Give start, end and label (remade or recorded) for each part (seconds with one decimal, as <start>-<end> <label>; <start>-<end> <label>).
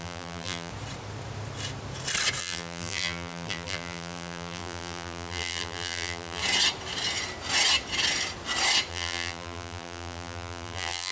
0.0-0.7 remade; 0.7-2.4 recorded; 2.4-6.4 remade; 6.4-8.9 recorded; 8.9-11.1 remade